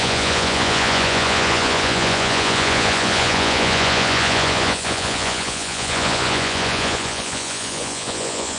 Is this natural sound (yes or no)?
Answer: no